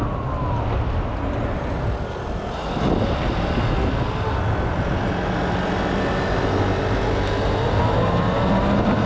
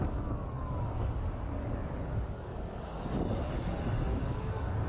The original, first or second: first